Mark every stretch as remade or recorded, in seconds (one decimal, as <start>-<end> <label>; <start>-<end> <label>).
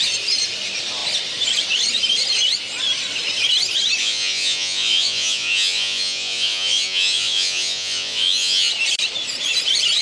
0.0-4.0 recorded; 4.0-8.7 remade; 8.7-10.0 recorded